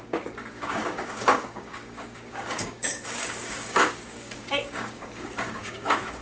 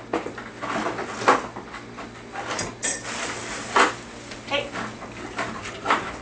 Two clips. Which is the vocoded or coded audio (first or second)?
first